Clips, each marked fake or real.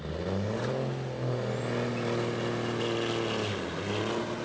real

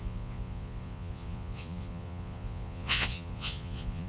fake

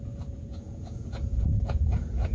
fake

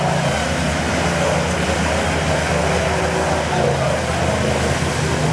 real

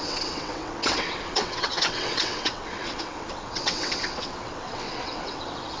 fake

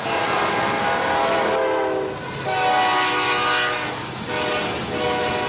real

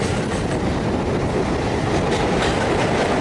real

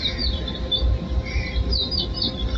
real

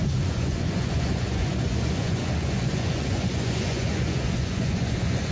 fake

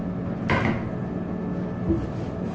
real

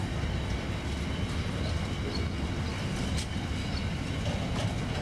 real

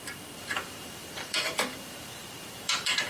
fake